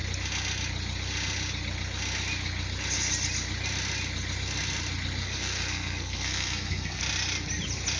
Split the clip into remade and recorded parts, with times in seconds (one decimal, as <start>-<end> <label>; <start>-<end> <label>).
0.0-5.2 recorded; 5.2-7.0 remade; 7.0-8.0 recorded

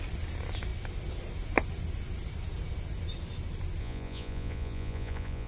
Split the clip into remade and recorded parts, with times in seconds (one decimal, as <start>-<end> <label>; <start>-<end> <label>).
0.0-3.8 recorded; 3.8-5.5 remade

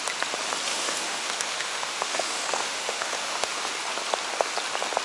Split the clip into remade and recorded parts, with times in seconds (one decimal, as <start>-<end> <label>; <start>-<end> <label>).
0.0-0.7 recorded; 0.7-3.7 remade; 3.7-5.0 recorded

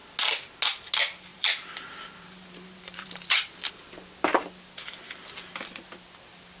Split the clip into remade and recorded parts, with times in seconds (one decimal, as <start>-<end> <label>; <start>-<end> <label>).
0.0-1.3 recorded; 1.3-3.7 remade; 3.7-6.6 recorded

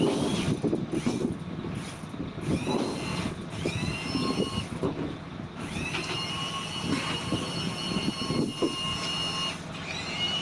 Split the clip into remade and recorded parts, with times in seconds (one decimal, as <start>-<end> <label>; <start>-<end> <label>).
0.0-10.4 recorded

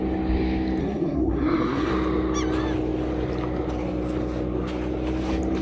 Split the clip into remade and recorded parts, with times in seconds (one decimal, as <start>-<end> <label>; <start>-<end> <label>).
0.0-0.8 recorded; 0.8-1.9 remade; 1.9-5.6 recorded